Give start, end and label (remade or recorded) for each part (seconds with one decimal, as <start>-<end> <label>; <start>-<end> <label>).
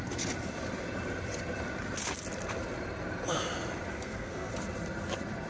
0.0-3.9 recorded; 3.9-4.5 remade; 4.5-5.5 recorded